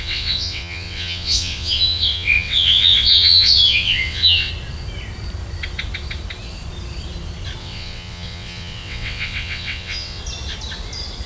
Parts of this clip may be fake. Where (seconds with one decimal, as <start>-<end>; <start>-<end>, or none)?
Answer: 0.0-4.5; 7.6-10.2

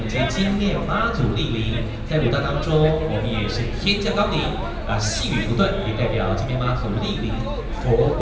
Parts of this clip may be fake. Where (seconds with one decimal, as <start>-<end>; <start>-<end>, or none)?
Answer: none

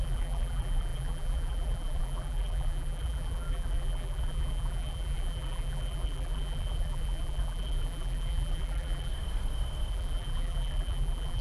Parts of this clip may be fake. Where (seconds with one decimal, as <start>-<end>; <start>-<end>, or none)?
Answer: 0.0-9.1; 9.9-11.4

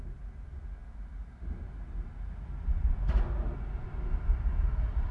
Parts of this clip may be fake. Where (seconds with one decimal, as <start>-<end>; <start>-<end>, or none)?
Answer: none